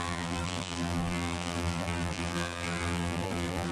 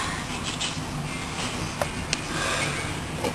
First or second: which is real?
second